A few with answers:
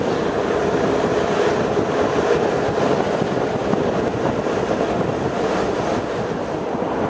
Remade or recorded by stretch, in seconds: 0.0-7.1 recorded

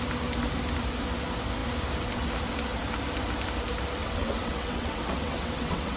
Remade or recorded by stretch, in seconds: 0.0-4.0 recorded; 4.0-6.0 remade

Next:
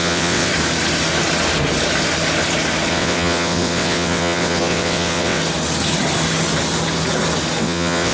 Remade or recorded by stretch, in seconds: 0.0-0.5 remade; 0.5-2.9 recorded; 2.9-5.4 remade; 5.4-7.6 recorded; 7.6-8.1 remade

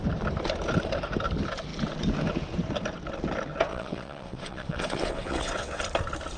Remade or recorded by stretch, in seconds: 0.0-3.7 recorded; 3.7-5.8 remade; 5.8-6.4 recorded

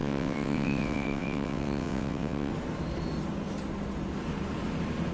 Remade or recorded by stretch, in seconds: 0.0-2.5 remade; 2.5-5.1 recorded

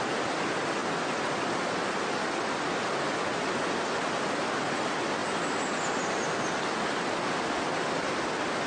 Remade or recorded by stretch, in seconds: 0.0-8.7 recorded